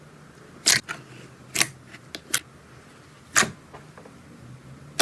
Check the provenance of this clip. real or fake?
real